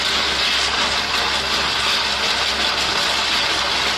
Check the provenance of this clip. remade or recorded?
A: recorded